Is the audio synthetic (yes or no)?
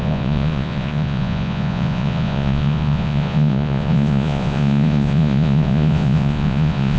yes